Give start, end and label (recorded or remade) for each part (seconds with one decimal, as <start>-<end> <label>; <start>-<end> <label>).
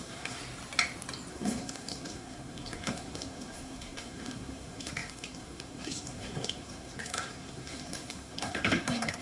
0.0-0.4 remade; 0.4-1.3 recorded; 1.3-9.2 remade